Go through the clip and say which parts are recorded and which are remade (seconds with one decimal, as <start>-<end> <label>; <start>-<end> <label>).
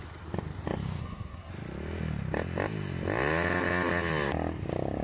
0.0-1.0 recorded; 1.0-1.5 remade; 1.5-5.0 recorded